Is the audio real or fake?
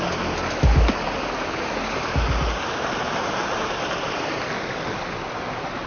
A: real